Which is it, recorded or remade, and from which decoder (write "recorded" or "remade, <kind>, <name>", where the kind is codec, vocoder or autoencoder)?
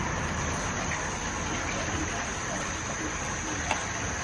recorded